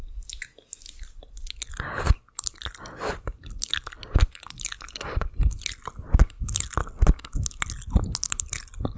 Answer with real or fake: real